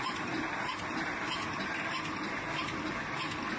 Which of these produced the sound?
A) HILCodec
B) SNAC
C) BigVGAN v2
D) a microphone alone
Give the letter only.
D